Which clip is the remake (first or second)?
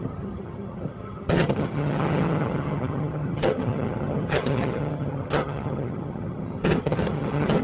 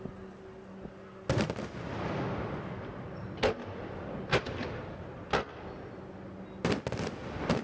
first